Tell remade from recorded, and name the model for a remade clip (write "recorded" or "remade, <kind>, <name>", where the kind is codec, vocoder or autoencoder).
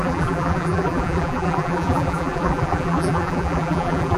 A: remade, vocoder, BigVGAN v2